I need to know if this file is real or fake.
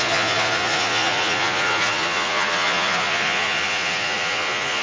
fake